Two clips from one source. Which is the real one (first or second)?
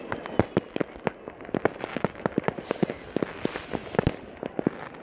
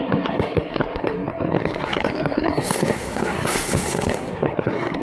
first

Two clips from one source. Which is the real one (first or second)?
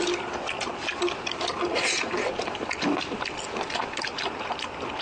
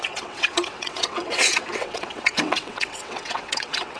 first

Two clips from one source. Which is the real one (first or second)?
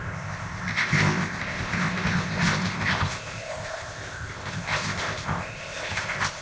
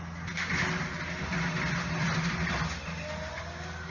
second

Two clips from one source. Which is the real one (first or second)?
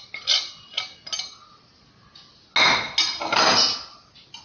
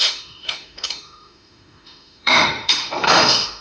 first